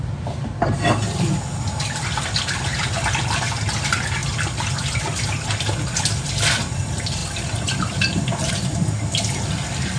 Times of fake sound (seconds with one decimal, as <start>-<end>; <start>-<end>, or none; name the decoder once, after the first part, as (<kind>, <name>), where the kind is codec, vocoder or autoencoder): 2.7-3.4 (vocoder, BigVGAN v2); 4.2-5.3; 7.2-8.5